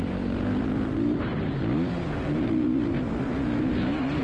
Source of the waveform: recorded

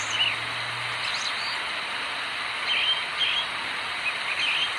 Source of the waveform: recorded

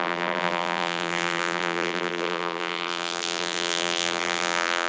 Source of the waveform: remade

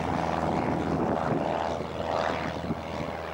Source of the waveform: recorded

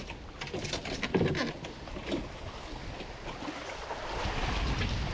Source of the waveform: recorded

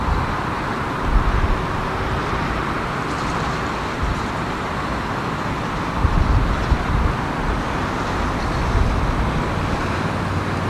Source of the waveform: recorded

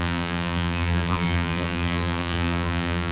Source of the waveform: remade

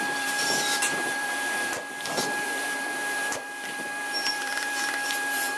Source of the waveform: remade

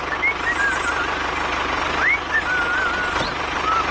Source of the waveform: recorded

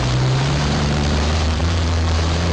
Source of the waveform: remade